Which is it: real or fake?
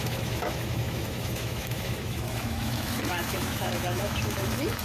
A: fake